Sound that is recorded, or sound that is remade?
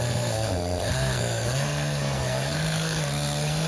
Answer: remade